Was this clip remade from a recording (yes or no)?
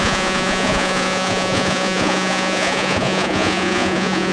yes